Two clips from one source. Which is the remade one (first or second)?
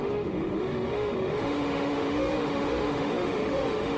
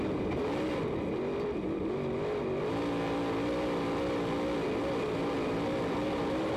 first